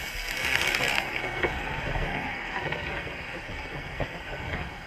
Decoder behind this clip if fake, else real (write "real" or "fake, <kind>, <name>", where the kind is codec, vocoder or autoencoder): fake, codec, SNAC